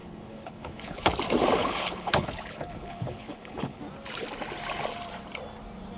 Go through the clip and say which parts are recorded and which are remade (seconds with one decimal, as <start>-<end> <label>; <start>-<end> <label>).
0.0-1.1 remade; 1.1-1.6 recorded; 1.6-3.8 remade; 3.8-6.0 recorded